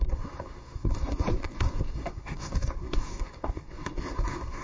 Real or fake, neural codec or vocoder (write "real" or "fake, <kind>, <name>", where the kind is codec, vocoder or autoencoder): fake, codec, SNAC